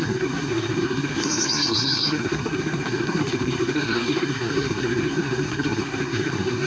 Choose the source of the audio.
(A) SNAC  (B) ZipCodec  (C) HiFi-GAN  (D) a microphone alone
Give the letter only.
A